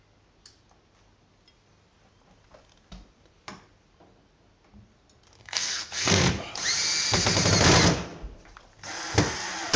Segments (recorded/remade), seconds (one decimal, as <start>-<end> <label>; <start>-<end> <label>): 0.0-5.4 recorded; 5.4-6.2 remade; 6.2-9.8 recorded